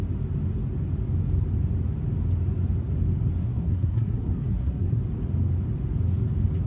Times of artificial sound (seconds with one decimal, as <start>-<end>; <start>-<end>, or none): 3.4-5.0